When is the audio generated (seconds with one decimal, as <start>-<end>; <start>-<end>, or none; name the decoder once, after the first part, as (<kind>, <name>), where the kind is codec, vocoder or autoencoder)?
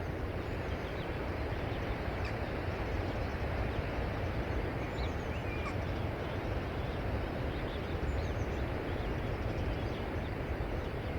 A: 0.0-3.3 (vocoder, BigVGAN v2); 7.3-11.2